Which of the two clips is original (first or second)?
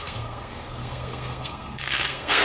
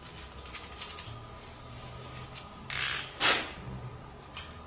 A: second